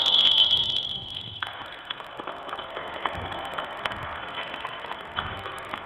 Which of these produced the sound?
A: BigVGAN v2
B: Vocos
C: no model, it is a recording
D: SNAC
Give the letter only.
D